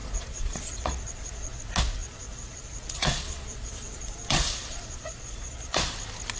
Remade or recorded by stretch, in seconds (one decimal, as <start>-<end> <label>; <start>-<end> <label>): 0.0-1.6 remade; 1.6-2.0 recorded; 2.0-5.8 remade; 5.8-6.4 recorded